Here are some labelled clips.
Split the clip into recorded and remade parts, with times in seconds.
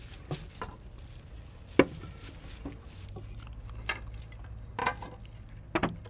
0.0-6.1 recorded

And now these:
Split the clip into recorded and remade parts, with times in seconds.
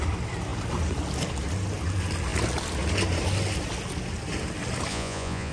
0.0-4.9 recorded; 4.9-5.5 remade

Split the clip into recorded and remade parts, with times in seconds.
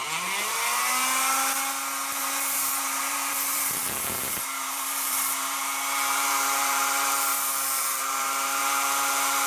0.0-2.2 recorded; 2.2-9.5 remade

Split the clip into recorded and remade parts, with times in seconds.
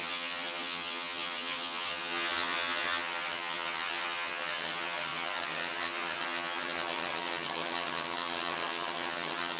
0.0-9.6 remade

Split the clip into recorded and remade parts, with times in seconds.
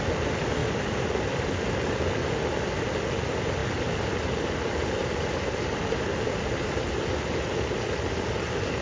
0.0-8.8 recorded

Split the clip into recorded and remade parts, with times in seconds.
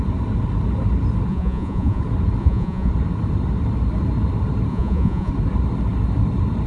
0.0-1.3 recorded; 1.3-2.0 remade; 2.0-2.4 recorded; 2.4-2.9 remade; 2.9-4.7 recorded; 4.7-5.3 remade; 5.3-6.7 recorded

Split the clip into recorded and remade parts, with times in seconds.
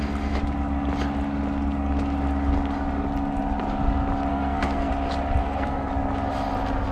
0.0-4.3 recorded; 4.3-4.9 remade; 4.9-5.4 recorded; 5.4-5.9 remade; 5.9-6.9 recorded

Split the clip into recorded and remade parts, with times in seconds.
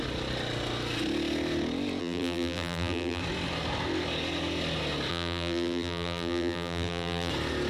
0.0-2.0 recorded; 2.0-3.2 remade; 3.2-5.1 recorded; 5.1-7.3 remade; 7.3-7.7 recorded